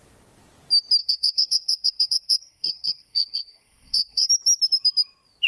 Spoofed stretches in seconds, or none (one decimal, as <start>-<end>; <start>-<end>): 1.0-4.3